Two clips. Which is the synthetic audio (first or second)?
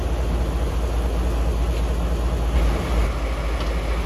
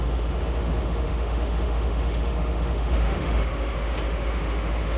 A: second